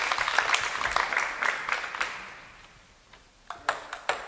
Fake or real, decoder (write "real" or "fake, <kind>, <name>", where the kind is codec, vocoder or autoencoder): real